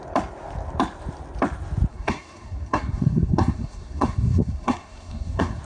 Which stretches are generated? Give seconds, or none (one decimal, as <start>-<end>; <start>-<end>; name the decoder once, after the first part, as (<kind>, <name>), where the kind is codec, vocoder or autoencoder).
1.9-5.6 (codec, SNAC)

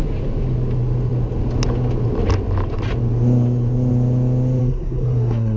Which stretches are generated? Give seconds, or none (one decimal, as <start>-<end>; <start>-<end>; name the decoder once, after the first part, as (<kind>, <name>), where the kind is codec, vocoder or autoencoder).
4.6-5.6 (codec, SNAC)

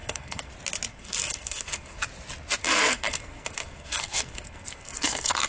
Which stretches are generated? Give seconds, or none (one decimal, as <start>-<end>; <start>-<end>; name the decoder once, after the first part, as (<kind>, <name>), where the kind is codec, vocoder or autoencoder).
0.0-0.5 (codec, SNAC); 0.9-2.0; 2.6-5.5

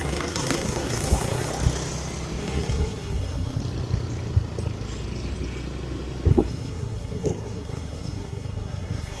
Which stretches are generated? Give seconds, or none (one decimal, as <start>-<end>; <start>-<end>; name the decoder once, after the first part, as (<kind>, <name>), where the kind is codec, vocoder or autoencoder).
0.0-1.5 (codec, SNAC); 2.4-3.6; 6.3-9.2

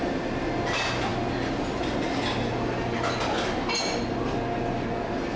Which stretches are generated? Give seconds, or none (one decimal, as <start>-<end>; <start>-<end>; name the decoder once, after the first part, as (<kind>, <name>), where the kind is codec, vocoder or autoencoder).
none